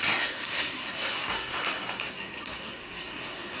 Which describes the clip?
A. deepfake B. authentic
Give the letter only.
A